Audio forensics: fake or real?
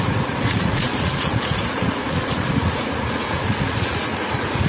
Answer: fake